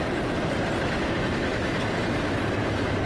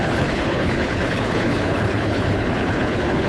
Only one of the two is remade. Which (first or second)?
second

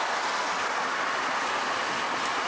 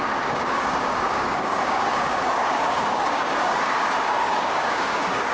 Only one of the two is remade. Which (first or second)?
second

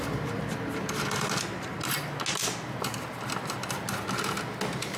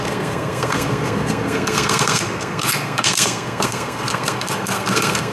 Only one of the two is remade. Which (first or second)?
second